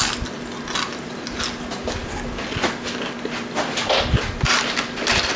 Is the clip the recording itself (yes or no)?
yes